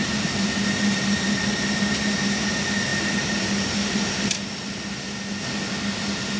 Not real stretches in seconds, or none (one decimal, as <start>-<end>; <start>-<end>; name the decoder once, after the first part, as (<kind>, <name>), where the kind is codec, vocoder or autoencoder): 0.0-2.2 (vocoder, BigVGAN v2); 2.9-4.4

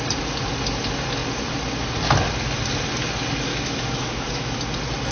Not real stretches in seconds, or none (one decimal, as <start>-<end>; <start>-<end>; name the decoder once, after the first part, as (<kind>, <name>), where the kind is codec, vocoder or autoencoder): 3.5-4.6 (autoencoder, DAC-VAE)